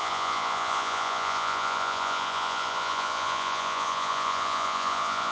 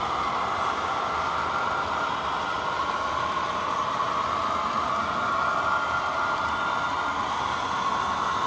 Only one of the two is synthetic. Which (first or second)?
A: first